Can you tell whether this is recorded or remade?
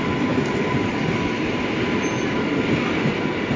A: recorded